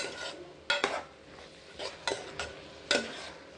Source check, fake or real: real